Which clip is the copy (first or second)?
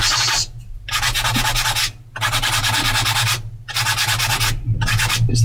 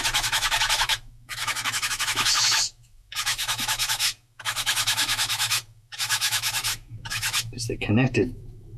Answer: second